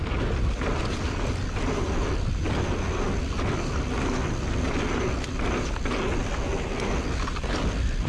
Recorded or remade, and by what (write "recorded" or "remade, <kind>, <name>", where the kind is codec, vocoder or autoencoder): recorded